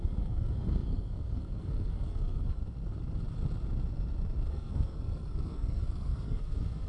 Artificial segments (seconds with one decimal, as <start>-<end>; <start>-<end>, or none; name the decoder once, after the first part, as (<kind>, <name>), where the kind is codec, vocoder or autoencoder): 0.0-2.6 (codec, SNAC); 4.5-6.9